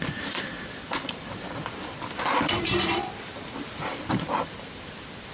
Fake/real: fake